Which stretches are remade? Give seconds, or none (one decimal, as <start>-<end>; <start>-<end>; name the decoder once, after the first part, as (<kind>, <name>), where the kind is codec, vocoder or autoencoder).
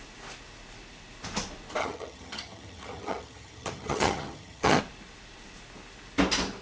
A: 1.8-4.8 (vocoder, HiFi-GAN)